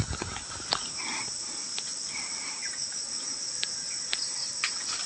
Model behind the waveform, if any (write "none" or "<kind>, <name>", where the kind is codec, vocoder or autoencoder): none